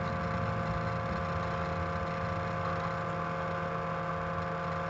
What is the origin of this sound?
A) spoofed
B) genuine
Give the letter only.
B